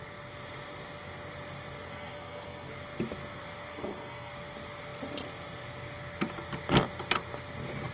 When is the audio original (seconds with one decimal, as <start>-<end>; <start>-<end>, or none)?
0.0-1.9; 2.7-3.7; 4.3-7.9